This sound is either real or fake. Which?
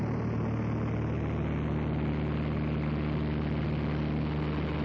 real